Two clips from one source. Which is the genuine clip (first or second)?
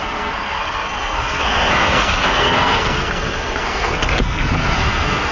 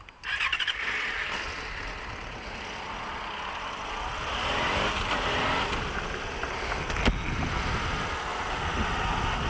second